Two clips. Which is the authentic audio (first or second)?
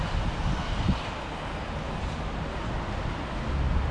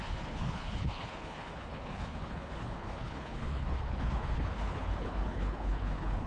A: first